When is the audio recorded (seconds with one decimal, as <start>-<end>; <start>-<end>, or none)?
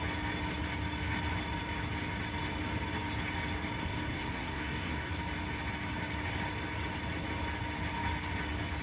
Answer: 0.0-3.8; 5.1-8.8